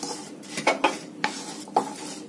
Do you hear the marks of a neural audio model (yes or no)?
no